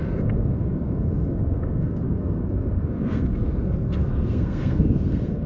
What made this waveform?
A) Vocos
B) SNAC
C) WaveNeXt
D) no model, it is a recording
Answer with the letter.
B